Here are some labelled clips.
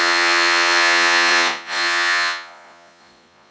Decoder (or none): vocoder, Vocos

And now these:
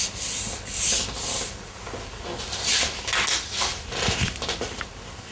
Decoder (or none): none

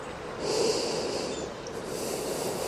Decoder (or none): none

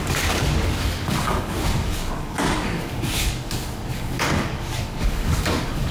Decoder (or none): codec, DAC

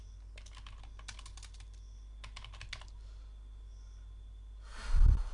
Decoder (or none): none